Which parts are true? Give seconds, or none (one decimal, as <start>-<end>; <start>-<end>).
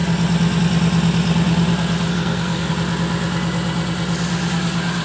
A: 0.0-2.1; 2.7-5.0